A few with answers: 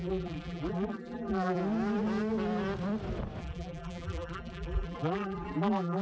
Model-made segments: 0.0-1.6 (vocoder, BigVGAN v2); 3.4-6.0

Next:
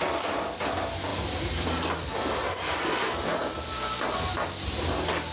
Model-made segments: 1.1-1.9 (vocoder, BigVGAN v2)

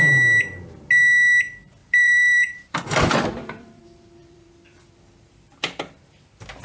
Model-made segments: 1.8-3.8 (vocoder, BigVGAN v2); 4.2-5.9

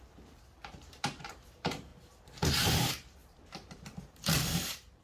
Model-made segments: 0.0-1.9 (vocoder, BigVGAN v2); 2.7-5.0

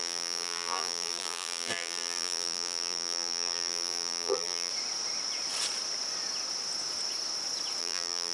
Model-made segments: 0.0-4.7 (vocoder, BigVGAN v2); 7.8-8.3

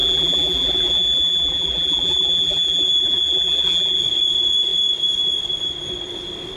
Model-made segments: 0.0-4.0 (vocoder, BigVGAN v2)